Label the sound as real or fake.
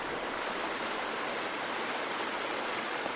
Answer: real